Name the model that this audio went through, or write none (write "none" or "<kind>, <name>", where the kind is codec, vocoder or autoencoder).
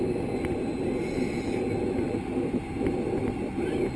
none